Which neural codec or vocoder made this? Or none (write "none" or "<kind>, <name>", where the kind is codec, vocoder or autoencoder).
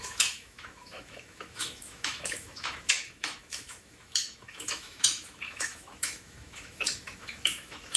autoencoder, DAC-VAE